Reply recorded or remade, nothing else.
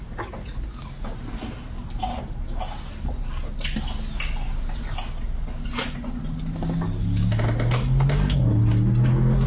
recorded